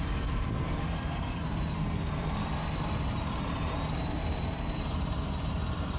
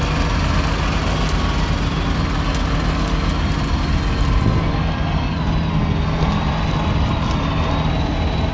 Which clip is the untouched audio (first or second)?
second